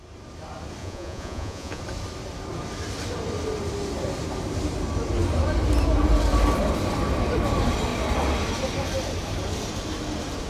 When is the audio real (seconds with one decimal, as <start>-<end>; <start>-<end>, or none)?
0.0-0.8; 1.8-10.5